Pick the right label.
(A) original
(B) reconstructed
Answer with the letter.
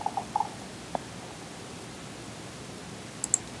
A